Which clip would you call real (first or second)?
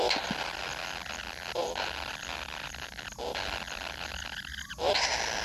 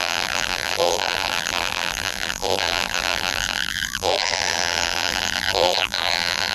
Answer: first